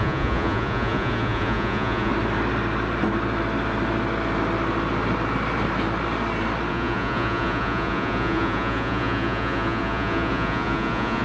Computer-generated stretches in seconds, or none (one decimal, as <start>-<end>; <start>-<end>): 0.0-2.1; 6.7-11.2